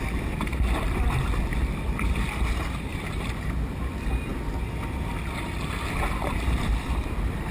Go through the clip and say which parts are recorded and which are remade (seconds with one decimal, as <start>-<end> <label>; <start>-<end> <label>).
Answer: 0.0-7.5 recorded